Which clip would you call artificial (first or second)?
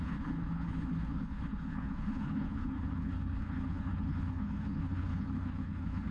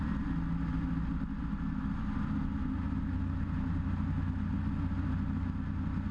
first